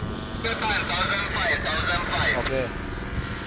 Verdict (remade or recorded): recorded